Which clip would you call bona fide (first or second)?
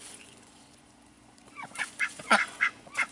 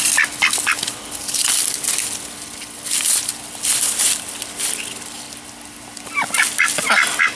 second